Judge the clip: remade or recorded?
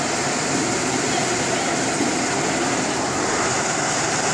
recorded